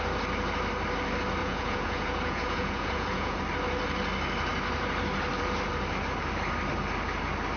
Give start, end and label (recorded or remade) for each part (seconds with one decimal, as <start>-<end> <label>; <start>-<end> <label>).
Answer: 0.0-1.4 recorded; 1.4-3.4 remade; 3.4-7.6 recorded